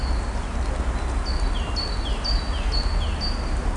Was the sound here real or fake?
real